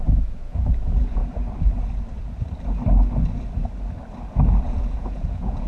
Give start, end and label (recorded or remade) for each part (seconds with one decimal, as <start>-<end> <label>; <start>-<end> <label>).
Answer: 0.0-1.2 remade; 1.2-4.6 recorded; 4.6-5.7 remade